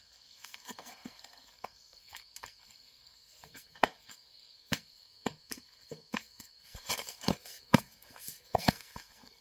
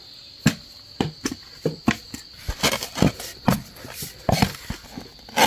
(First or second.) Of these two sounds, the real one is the second